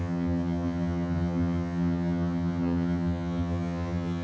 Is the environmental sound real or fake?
fake